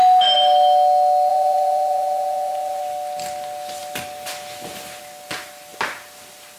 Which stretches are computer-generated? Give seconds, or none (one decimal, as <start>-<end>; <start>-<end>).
1.3-2.8